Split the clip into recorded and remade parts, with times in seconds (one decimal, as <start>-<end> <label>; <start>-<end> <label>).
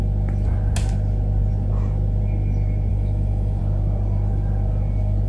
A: 0.0-2.9 recorded; 2.9-3.6 remade; 3.6-5.3 recorded